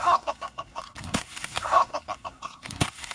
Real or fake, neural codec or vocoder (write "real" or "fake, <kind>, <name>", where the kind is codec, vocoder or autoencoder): fake, codec, SNAC